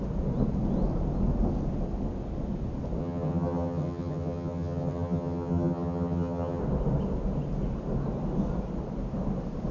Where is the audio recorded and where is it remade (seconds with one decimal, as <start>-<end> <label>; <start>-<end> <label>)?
0.0-3.0 recorded; 3.0-6.6 remade; 6.6-9.7 recorded